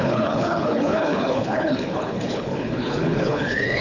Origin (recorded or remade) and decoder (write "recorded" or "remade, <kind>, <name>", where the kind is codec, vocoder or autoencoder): remade, codec, HILCodec